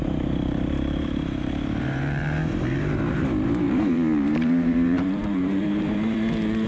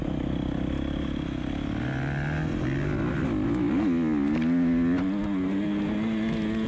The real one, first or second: second